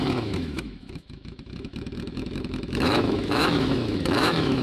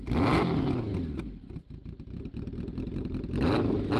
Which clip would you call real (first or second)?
second